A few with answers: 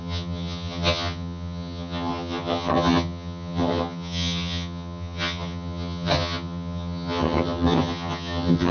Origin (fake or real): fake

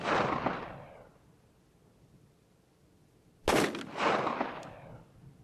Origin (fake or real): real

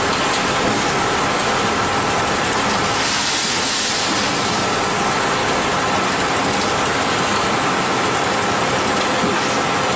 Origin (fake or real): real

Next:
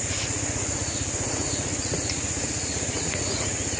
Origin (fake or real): fake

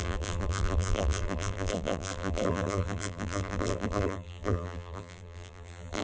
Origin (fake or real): fake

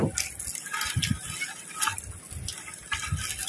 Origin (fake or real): real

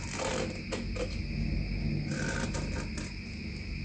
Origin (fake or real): real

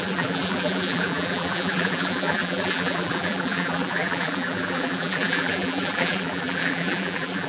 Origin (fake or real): fake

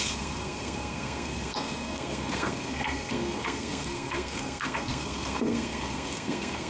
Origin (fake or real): fake